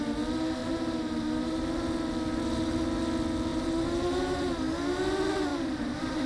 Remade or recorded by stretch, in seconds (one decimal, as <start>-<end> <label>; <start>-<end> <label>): 0.0-0.6 recorded; 0.6-1.6 remade; 1.6-3.5 recorded; 3.5-4.5 remade; 4.5-5.5 recorded; 5.5-6.3 remade